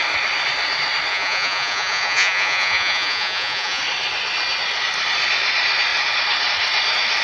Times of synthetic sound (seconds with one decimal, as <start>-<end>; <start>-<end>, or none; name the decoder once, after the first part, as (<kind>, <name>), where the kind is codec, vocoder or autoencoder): 1.1-3.8 (vocoder, Vocos)